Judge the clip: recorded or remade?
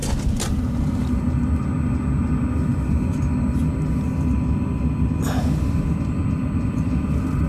recorded